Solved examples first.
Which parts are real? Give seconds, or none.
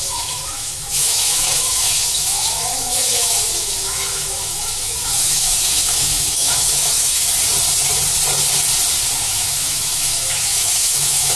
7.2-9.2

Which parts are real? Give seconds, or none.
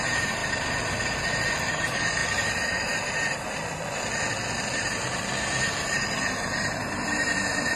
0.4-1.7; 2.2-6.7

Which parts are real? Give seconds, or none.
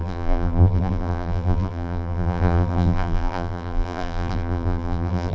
none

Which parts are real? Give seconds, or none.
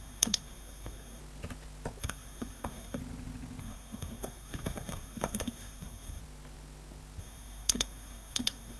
1.2-2.0; 3.0-3.6; 6.2-7.2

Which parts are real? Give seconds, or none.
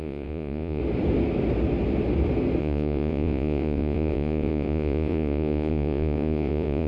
0.8-2.6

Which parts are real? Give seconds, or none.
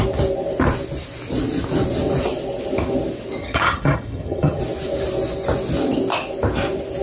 0.0-3.4; 4.6-7.0